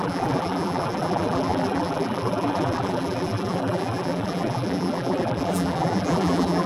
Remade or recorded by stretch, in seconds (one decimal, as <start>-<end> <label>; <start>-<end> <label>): 0.0-6.7 remade